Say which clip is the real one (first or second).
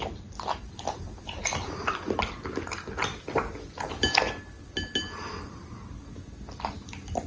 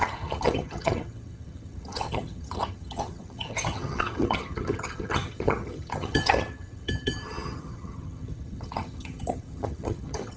first